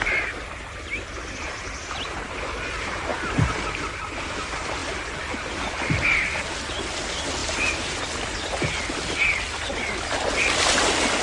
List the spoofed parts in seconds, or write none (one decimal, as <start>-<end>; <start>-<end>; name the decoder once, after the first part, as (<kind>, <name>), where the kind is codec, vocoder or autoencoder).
7.4-8.0 (vocoder, BigVGAN v2)